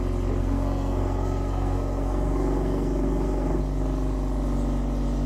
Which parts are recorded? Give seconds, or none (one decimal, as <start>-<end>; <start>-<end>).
0.0-0.4; 3.6-5.3